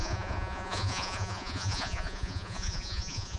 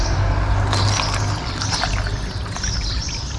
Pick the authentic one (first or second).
second